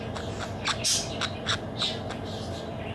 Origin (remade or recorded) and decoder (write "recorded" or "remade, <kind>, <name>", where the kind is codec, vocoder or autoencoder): recorded